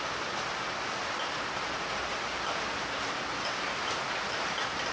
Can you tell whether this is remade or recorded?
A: remade